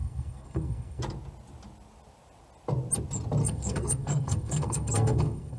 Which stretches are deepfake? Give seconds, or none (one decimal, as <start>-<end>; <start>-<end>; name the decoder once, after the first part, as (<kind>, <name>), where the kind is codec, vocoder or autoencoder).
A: 0.0-1.0 (codec, SNAC); 3.4-5.6